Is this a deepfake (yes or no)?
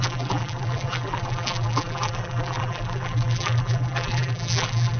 yes